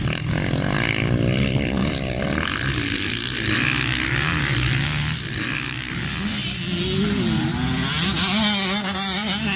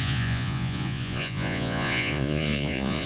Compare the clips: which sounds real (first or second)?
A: first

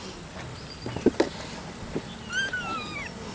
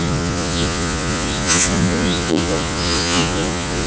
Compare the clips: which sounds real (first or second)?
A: first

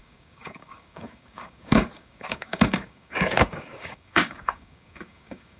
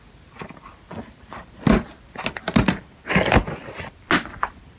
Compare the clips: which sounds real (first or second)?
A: second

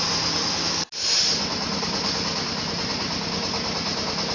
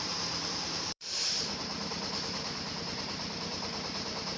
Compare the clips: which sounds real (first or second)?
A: first